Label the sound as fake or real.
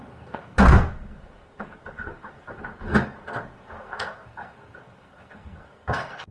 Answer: fake